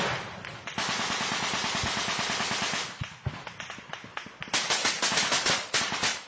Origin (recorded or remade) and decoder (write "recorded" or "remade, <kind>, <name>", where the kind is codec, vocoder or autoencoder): recorded